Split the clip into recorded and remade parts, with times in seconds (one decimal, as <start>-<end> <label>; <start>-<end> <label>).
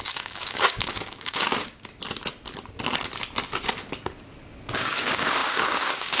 0.0-1.9 remade; 1.9-4.7 recorded; 4.7-6.2 remade